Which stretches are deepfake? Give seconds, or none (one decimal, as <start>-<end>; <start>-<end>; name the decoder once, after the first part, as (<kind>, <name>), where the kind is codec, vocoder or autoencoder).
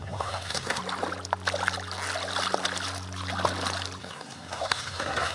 0.0-0.8 (codec, SNAC); 4.0-5.3